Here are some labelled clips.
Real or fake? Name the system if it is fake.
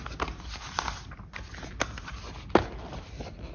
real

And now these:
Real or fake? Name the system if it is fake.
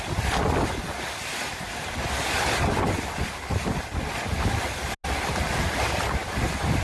real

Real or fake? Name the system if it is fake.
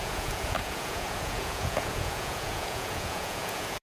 fake, vocoder, Vocos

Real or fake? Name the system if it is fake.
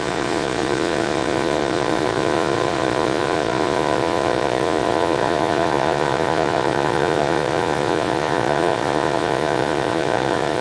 fake, vocoder, Vocos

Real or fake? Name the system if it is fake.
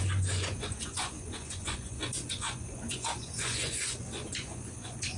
fake, vocoder, Vocos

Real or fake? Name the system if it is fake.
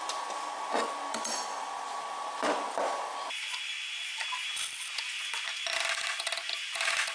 real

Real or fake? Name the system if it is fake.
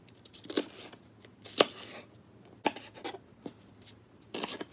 real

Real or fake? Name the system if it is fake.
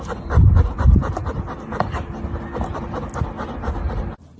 real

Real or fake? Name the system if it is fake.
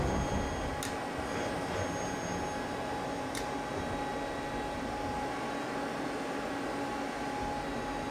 real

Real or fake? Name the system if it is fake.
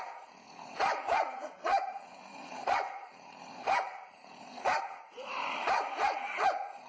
fake, vocoder, Vocos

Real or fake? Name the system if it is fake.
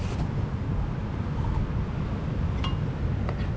real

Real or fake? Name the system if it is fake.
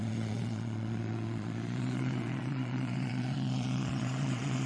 fake, vocoder, Vocos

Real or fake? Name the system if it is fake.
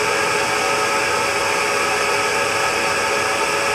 real